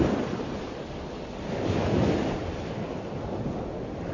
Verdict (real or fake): real